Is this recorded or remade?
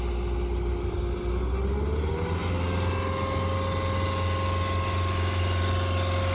recorded